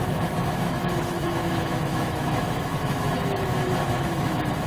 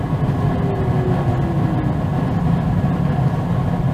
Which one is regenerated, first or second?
first